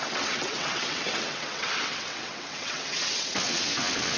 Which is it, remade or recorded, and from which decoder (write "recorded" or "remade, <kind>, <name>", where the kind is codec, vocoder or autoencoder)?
remade, vocoder, WaveNeXt